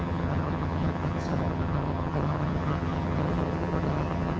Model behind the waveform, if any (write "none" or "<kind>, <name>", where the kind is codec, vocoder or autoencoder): vocoder, HiFi-GAN